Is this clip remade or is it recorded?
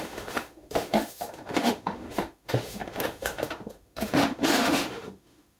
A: remade